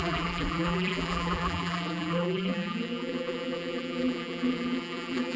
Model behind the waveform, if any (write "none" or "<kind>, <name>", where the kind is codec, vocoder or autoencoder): vocoder, BigVGAN v2